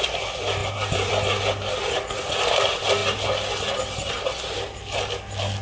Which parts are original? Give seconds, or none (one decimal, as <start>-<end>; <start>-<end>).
0.0-0.6; 1.1-5.6